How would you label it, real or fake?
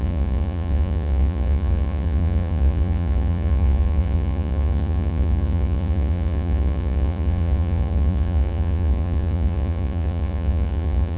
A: fake